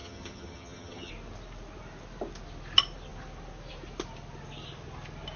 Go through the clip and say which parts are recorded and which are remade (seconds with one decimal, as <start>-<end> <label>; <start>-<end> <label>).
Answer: 0.0-1.1 remade; 1.1-5.4 recorded